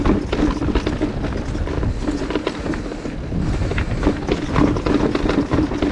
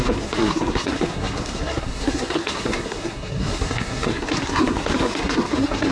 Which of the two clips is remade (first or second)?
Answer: second